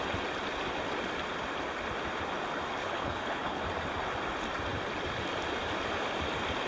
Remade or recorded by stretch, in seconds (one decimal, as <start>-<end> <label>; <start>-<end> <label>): 0.0-2.8 recorded; 2.8-3.6 remade; 3.6-6.7 recorded